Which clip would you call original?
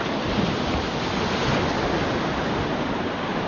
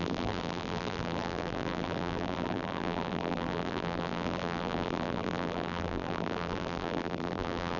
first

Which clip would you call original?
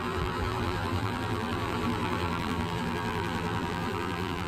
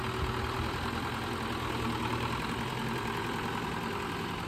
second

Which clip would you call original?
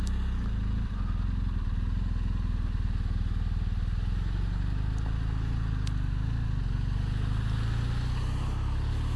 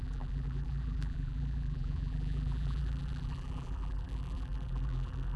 first